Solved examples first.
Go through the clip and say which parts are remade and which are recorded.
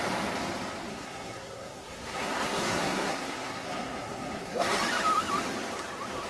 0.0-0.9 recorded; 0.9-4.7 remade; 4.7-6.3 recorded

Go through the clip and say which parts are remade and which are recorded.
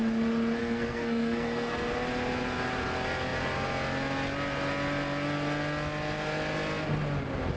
0.0-0.6 recorded; 0.6-1.9 remade; 1.9-7.6 recorded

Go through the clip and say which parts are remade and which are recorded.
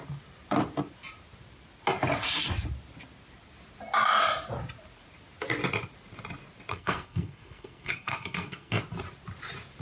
0.0-6.7 recorded; 6.7-8.8 remade; 8.8-9.8 recorded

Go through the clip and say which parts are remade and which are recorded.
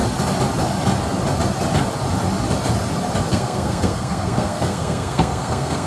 0.0-3.3 recorded; 3.3-5.9 remade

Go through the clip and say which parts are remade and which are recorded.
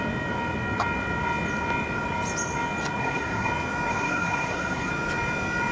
0.0-3.0 recorded; 3.0-3.5 remade; 3.5-3.9 recorded; 3.9-4.9 remade; 4.9-5.7 recorded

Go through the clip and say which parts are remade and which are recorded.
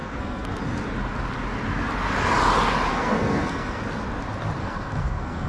0.0-0.6 remade; 0.6-2.9 recorded; 2.9-3.8 remade; 3.8-4.6 recorded; 4.6-5.5 remade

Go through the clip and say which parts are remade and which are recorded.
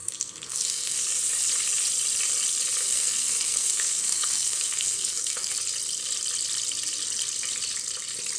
0.0-1.0 remade; 1.0-2.8 recorded; 2.8-5.5 remade; 5.5-8.4 recorded